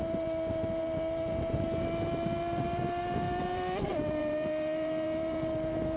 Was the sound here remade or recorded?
remade